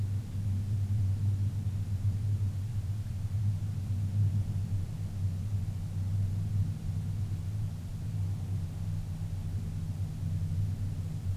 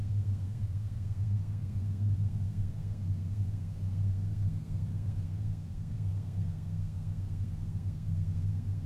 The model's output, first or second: second